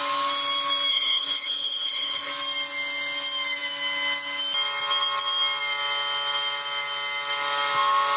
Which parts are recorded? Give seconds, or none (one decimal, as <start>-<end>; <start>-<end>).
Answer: 0.0-0.9; 2.3-8.2